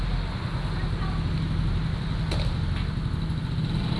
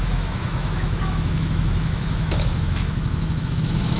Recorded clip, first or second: first